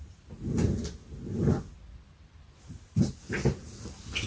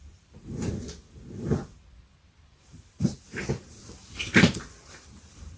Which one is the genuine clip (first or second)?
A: first